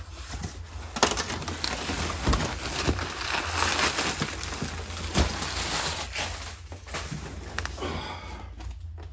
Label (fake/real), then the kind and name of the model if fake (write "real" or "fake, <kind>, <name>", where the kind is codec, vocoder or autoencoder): real